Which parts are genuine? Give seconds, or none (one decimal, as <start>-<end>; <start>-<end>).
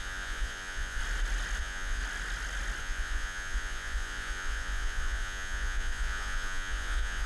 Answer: 1.0-1.6; 2.0-2.8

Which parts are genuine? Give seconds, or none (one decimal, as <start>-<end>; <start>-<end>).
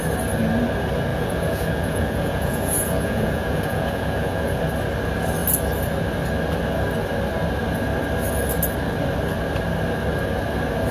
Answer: 0.0-1.1; 4.6-10.9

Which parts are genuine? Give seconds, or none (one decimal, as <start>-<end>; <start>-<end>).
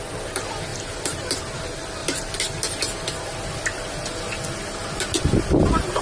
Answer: 0.0-6.0